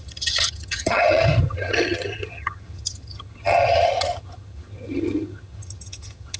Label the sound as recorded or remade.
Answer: remade